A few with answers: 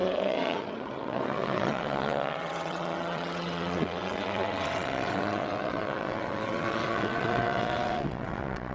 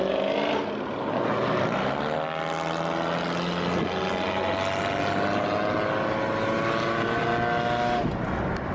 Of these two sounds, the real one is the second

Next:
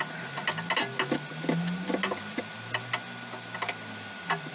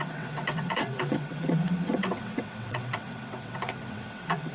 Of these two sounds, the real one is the first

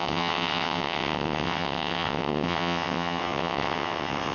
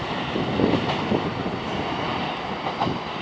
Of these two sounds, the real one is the second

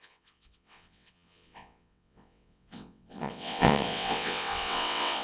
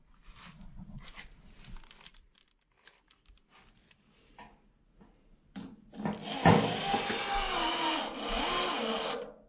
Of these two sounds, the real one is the second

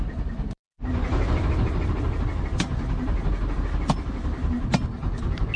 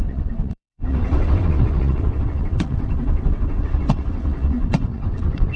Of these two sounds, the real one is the first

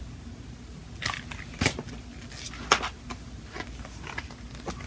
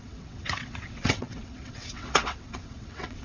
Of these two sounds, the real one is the first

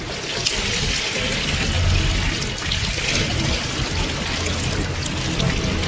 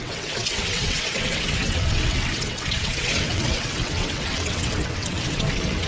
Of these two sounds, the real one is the first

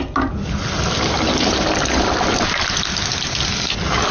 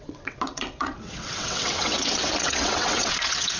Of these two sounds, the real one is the first